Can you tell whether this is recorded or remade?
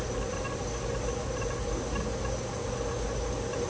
recorded